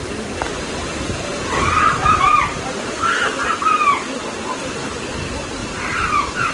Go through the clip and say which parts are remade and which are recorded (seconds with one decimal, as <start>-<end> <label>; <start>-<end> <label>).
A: 0.0-1.3 recorded; 1.3-3.3 remade; 3.3-5.6 recorded; 5.6-6.5 remade